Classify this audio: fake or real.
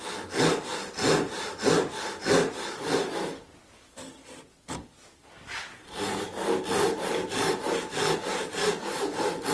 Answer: real